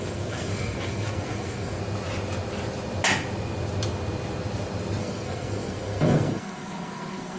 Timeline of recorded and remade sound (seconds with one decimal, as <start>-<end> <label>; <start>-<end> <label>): 0.0-1.8 remade; 1.8-5.0 recorded; 5.0-7.4 remade